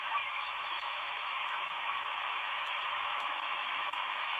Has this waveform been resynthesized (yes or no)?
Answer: yes